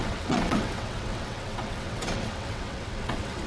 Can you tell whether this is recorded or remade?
remade